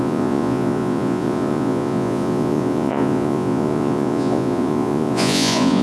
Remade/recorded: remade